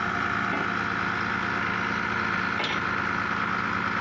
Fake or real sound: real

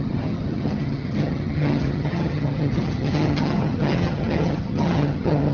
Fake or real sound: fake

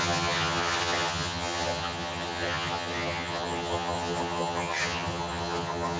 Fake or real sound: fake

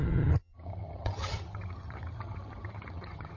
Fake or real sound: fake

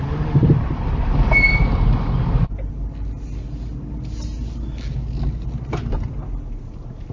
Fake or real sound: real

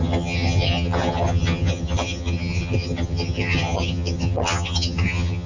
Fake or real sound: fake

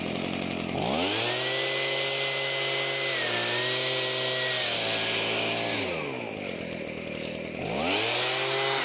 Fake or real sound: real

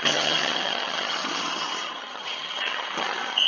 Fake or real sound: fake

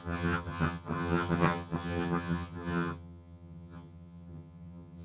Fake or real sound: fake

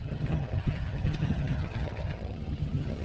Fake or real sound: fake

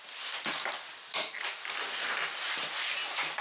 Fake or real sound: real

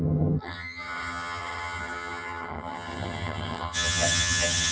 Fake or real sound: fake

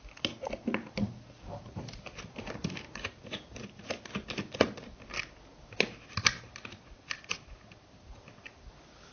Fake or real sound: real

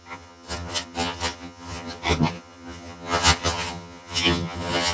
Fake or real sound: fake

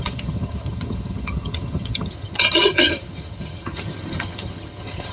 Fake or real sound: fake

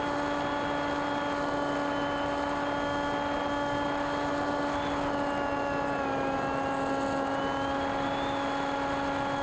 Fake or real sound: real